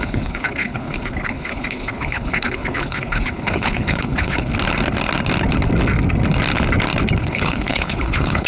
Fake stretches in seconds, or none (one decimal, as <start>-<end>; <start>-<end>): 0.0-4.5; 7.2-8.5